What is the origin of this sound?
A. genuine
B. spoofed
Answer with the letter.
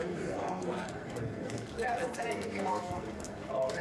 B